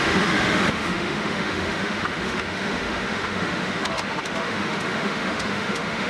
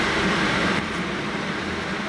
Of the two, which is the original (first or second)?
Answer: second